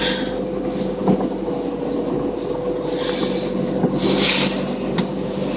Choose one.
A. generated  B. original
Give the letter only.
B